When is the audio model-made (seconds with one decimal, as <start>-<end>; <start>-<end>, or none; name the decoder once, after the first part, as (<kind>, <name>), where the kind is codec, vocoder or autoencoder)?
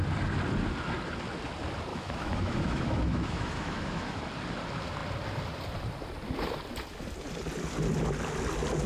1.9-4.2 (autoencoder, DAC-VAE)